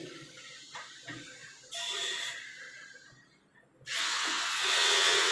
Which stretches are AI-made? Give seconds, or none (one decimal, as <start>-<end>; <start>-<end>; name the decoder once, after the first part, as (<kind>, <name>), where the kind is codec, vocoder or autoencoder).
4.0-5.3 (vocoder, WaveNeXt)